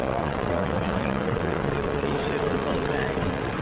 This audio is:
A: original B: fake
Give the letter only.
B